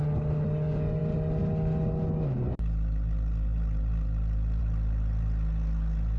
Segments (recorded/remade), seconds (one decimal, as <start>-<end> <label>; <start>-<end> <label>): 0.0-6.2 recorded